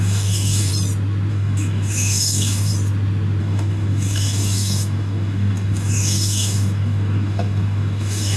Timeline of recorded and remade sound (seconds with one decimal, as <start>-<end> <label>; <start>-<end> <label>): 0.0-0.7 remade; 0.7-1.3 recorded; 1.3-2.7 remade; 2.7-3.4 recorded; 3.4-8.4 remade